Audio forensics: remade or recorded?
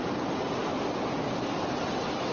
recorded